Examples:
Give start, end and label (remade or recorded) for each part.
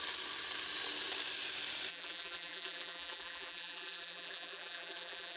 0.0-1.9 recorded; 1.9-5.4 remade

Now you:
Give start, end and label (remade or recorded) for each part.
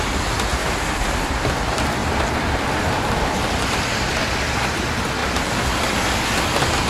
0.0-0.6 recorded; 0.6-1.3 remade; 1.3-2.0 recorded; 2.0-4.3 remade; 4.3-5.2 recorded; 5.2-5.8 remade; 5.8-6.9 recorded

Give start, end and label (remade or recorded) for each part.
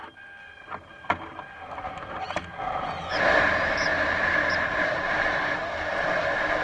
0.0-3.9 recorded; 3.9-5.5 remade; 5.5-6.6 recorded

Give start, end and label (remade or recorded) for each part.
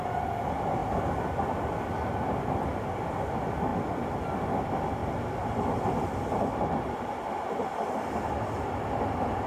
0.0-5.0 recorded; 5.0-7.9 remade; 7.9-9.5 recorded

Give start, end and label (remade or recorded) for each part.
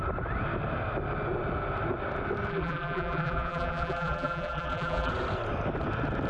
0.0-2.5 recorded; 2.5-5.1 remade; 5.1-6.3 recorded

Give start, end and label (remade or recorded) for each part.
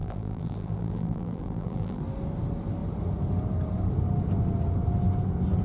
0.0-2.0 remade; 2.0-5.6 recorded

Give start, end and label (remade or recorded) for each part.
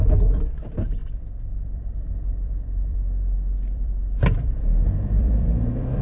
0.0-6.0 remade